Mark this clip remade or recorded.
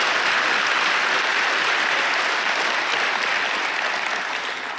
recorded